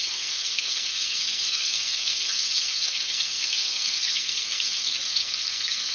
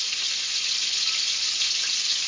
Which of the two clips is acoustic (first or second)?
second